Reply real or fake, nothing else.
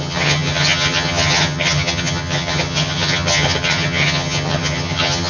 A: fake